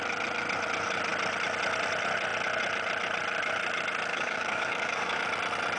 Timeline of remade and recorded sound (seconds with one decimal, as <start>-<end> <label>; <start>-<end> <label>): 0.0-4.1 recorded; 4.1-5.2 remade; 5.2-5.8 recorded